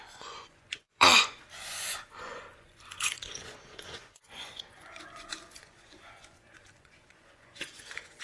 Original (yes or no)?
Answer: no